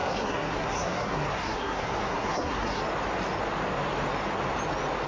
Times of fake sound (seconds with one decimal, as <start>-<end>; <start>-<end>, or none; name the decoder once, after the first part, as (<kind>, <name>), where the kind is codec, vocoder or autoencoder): 0.0-2.8 (codec, SNAC)